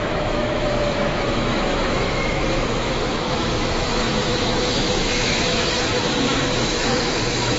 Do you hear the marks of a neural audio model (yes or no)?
yes